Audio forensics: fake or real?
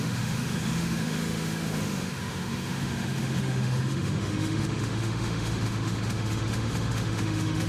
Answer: fake